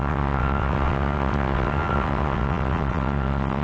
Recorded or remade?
remade